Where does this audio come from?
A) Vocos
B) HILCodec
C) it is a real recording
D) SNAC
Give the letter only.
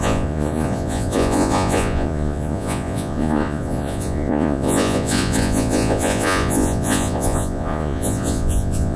A